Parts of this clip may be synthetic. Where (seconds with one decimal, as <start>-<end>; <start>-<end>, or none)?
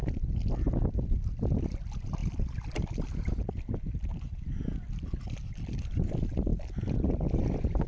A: none